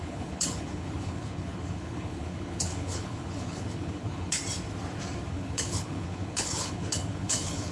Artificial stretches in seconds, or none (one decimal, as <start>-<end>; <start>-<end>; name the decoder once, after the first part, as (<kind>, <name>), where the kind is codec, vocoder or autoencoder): 0.0-4.4 (codec, HILCodec); 5.3-7.7